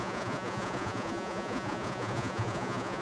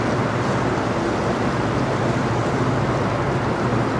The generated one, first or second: first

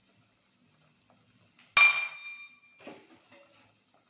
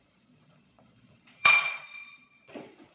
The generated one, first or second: second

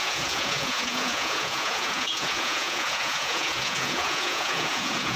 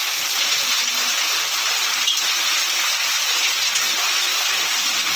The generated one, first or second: first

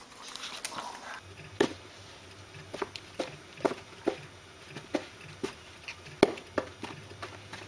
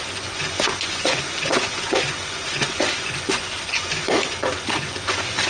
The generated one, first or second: second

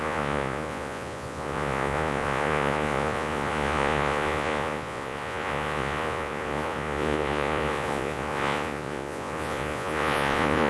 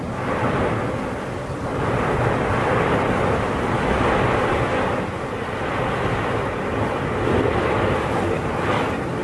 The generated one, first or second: first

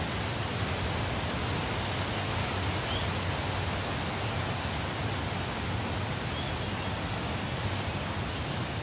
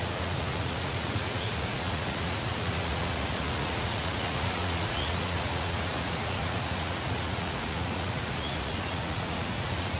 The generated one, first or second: second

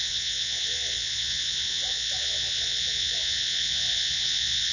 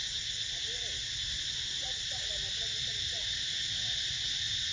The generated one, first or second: first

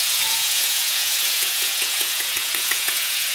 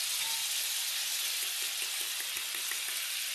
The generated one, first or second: first